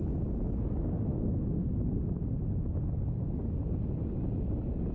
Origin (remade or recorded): recorded